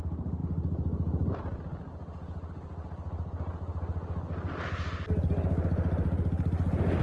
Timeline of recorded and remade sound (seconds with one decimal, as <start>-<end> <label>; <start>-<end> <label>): 0.0-7.0 recorded